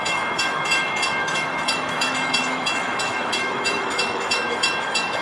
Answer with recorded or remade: remade